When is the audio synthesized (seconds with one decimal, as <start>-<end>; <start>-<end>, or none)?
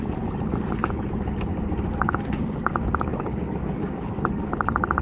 1.5-4.5